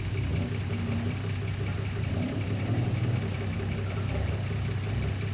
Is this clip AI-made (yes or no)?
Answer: no